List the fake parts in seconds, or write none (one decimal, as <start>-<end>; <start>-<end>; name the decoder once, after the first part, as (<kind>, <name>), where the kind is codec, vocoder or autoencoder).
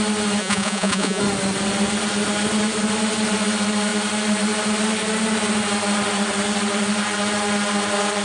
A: 0.4-1.2 (vocoder, Vocos)